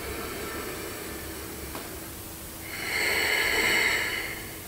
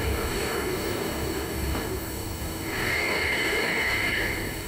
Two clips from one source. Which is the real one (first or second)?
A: first